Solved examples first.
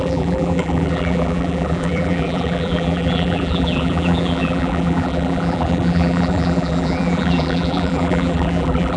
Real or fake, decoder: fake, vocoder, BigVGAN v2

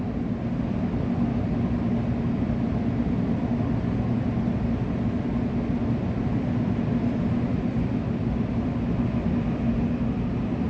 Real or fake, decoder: real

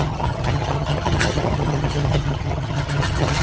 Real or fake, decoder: fake, vocoder, HiFi-GAN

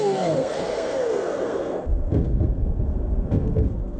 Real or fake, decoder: fake, codec, SNAC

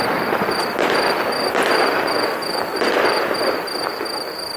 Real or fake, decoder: real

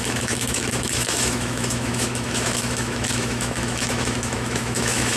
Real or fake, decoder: fake, autoencoder, DAC-VAE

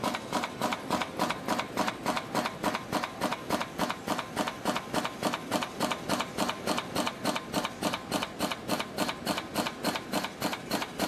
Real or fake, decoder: real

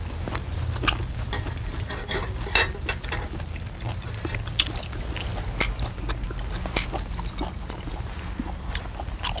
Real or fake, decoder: real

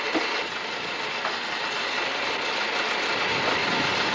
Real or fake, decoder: real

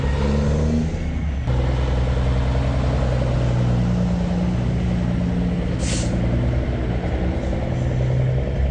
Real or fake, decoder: real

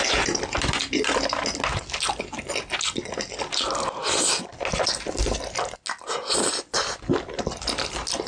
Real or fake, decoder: real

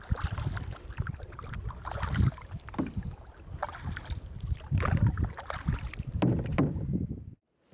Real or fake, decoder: real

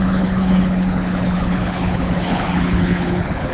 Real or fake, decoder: fake, codec, HILCodec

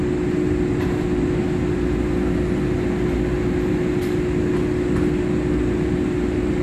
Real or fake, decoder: real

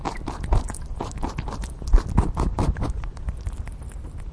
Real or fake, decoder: real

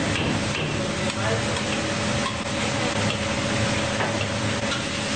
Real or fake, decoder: real